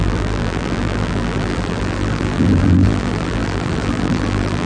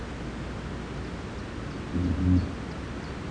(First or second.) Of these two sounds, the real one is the second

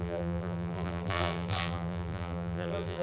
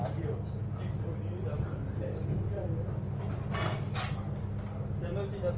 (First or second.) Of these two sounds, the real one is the second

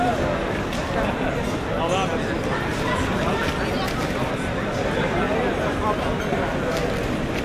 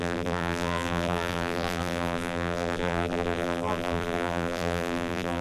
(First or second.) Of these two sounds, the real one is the first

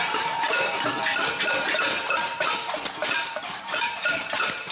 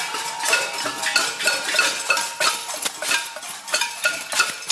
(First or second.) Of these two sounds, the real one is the second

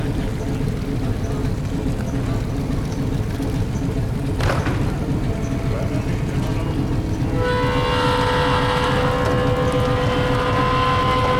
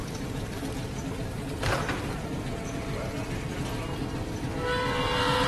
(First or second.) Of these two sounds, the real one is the first